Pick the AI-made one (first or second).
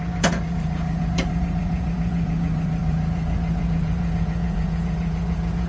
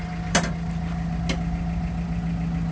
first